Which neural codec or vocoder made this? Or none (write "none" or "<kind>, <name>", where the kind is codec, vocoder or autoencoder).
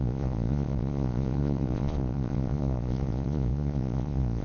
vocoder, Vocos